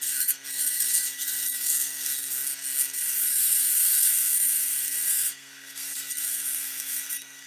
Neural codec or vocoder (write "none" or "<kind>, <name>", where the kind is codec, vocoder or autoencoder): codec, SNAC